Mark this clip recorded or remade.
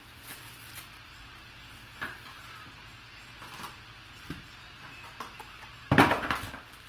recorded